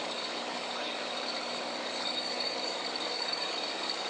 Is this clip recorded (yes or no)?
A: no